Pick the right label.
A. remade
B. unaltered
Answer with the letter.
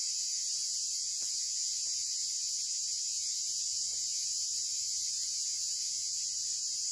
A